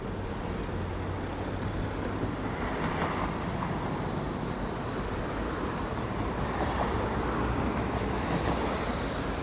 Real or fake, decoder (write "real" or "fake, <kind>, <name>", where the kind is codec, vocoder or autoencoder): real